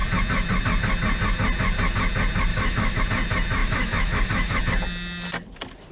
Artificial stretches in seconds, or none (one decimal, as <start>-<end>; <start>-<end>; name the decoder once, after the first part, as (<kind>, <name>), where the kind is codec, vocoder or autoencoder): 2.5-3.0 (autoencoder, DAC-VAE); 3.6-4.6